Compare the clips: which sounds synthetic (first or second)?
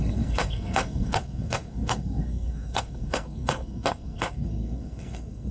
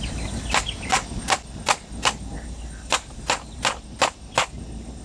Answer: first